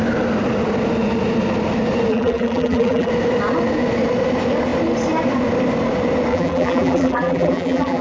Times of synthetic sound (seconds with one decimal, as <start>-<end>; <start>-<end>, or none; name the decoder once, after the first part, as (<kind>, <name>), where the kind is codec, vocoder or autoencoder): 2.1-3.1 (vocoder, BigVGAN v2); 6.3-8.0